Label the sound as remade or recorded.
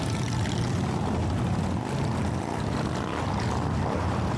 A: recorded